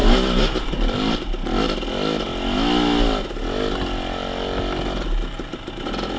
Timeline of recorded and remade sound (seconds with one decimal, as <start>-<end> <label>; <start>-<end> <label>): 0.0-6.2 recorded